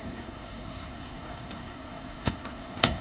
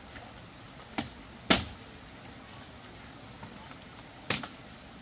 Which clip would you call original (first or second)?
second